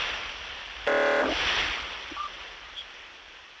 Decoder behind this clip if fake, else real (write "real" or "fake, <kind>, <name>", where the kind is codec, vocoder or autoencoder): real